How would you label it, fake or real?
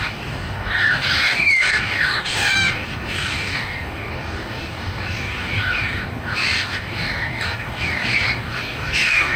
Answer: fake